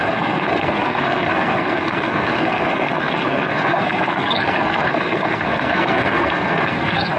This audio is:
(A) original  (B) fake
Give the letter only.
B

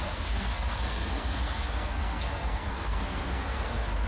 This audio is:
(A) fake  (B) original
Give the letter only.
A